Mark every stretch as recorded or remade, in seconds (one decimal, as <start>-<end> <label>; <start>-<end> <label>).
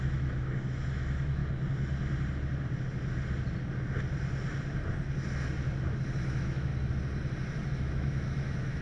0.0-1.4 remade; 1.4-6.1 recorded; 6.1-6.7 remade; 6.7-7.7 recorded; 7.7-8.8 remade